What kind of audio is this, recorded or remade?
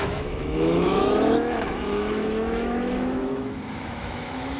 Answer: remade